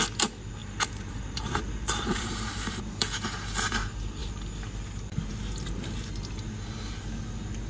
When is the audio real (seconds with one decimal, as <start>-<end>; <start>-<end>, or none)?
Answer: 0.0-0.6; 2.8-7.7